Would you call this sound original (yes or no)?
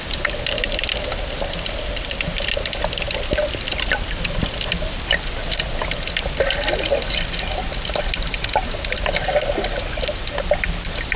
yes